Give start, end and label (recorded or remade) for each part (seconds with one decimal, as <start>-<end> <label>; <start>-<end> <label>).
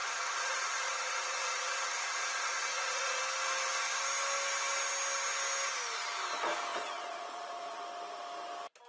0.0-3.2 remade; 3.2-6.7 recorded; 6.7-7.8 remade; 7.8-8.9 recorded